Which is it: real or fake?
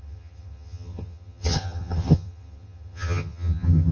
fake